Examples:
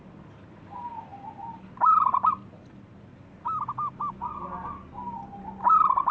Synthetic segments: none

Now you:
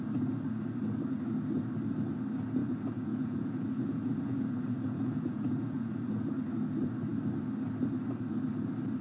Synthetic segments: 2.6-6.0 (vocoder, Vocos)

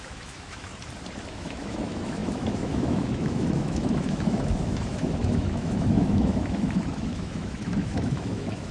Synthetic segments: 0.0-0.7 (autoencoder, DAC-VAE); 1.3-8.7

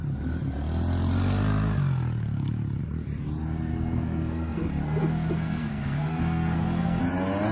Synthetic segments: 3.7-7.0 (codec, SNAC)

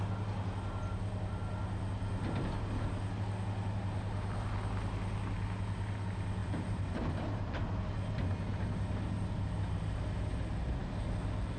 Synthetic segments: 6.4-7.5 (vocoder, BigVGAN v2)